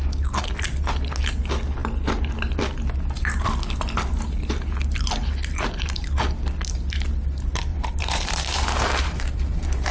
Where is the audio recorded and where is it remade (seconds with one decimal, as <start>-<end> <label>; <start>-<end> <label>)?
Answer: 0.0-7.7 recorded; 7.7-9.9 remade